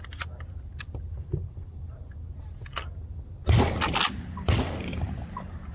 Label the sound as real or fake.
real